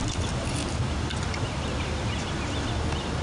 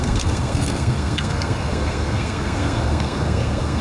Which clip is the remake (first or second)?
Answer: second